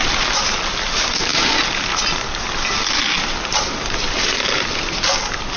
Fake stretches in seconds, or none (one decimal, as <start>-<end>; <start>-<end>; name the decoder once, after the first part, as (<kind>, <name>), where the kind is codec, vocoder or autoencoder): none